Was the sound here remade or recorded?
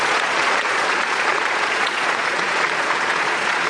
remade